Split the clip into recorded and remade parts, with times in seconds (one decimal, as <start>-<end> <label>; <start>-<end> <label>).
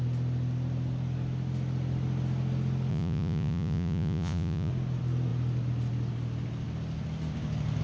0.0-2.9 recorded; 2.9-4.7 remade; 4.7-7.8 recorded